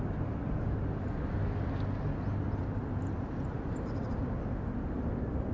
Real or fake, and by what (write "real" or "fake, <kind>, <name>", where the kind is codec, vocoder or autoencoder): real